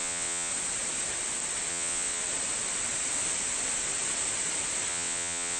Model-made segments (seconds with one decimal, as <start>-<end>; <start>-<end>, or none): 0.0-0.5; 1.7-2.2; 4.9-5.6